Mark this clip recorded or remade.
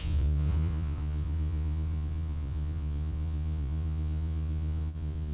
remade